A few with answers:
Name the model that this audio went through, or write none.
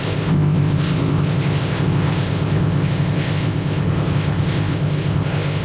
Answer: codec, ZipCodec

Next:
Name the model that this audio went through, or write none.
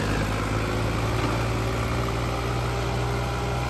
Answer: none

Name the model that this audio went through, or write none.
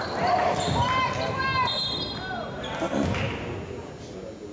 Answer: none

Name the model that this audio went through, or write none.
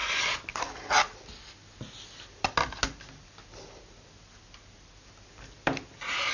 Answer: none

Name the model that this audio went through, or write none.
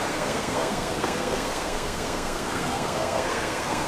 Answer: codec, SNAC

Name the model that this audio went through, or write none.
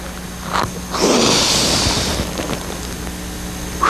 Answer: none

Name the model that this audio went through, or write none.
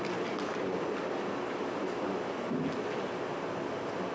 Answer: none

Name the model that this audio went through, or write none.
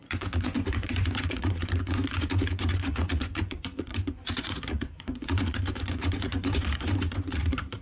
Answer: vocoder, Vocos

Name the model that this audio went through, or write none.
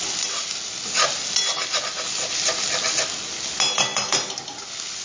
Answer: none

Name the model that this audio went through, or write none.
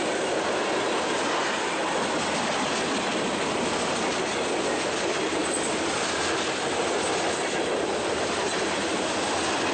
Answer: none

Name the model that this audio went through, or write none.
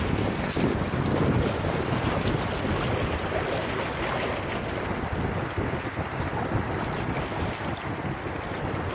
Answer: none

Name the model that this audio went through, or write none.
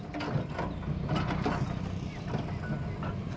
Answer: none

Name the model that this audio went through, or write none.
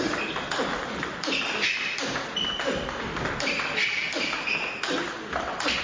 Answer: none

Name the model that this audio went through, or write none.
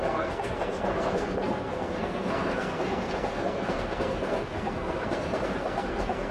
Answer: codec, SNAC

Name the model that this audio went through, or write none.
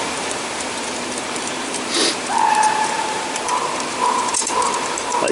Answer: vocoder, BigVGAN v2